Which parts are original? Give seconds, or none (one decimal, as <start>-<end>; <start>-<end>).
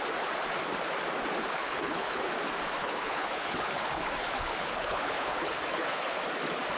0.0-1.6; 2.3-2.8; 6.2-6.8